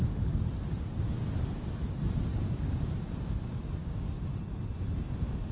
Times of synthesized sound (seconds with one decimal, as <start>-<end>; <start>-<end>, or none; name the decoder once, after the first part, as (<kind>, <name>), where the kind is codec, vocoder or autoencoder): 2.4-2.9 (codec, DAC); 3.8-4.3